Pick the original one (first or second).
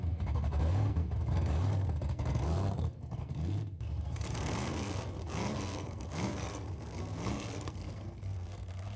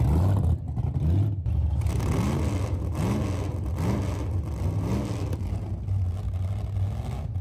second